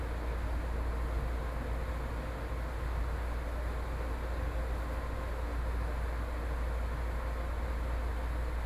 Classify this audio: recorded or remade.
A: recorded